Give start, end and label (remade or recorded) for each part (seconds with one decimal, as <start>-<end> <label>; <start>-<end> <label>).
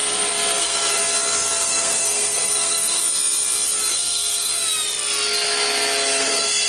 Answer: 0.0-0.6 recorded; 0.6-1.0 remade; 1.0-1.6 recorded; 1.6-3.0 remade; 3.0-3.9 recorded; 3.9-4.5 remade; 4.5-6.2 recorded; 6.2-6.7 remade